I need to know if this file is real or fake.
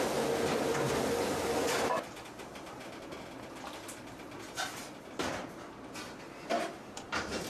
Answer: real